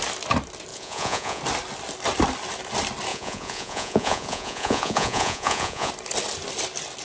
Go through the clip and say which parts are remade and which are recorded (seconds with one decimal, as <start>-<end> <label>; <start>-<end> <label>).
0.0-0.7 recorded; 0.7-1.4 remade; 1.4-3.1 recorded; 3.1-5.9 remade; 5.9-7.0 recorded